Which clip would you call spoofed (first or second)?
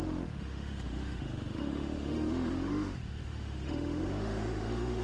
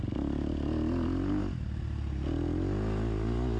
first